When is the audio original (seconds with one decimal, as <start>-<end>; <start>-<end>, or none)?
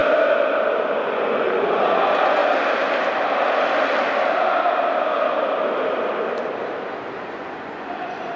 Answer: 0.0-1.0; 2.4-7.3